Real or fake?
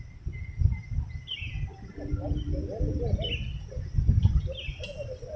real